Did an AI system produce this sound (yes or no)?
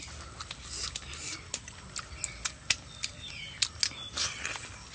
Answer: no